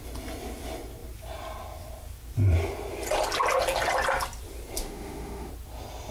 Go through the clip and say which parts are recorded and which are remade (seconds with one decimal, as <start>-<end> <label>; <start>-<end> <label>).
0.0-4.8 recorded; 4.8-5.5 remade; 5.5-6.1 recorded